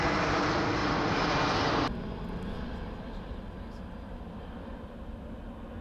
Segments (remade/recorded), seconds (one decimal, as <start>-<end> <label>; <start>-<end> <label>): 0.0-5.8 recorded